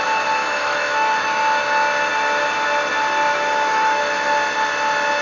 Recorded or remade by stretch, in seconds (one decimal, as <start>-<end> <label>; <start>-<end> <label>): 0.0-0.4 recorded; 0.4-1.4 remade; 1.4-3.3 recorded; 3.3-4.0 remade; 4.0-5.2 recorded